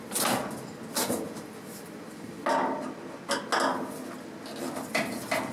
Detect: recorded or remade recorded